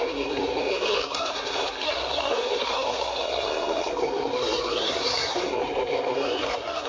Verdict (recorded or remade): remade